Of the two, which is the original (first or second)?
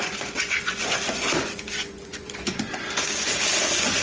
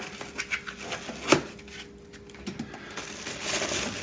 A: second